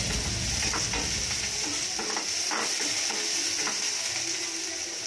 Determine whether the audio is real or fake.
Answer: real